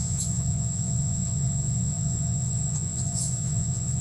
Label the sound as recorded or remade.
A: remade